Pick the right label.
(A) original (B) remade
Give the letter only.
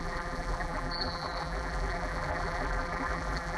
B